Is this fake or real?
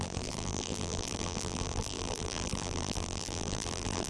fake